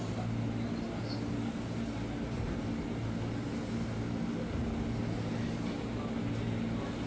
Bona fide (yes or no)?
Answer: yes